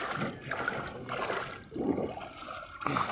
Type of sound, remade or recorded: recorded